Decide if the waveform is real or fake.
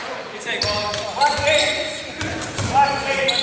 real